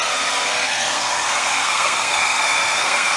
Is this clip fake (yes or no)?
yes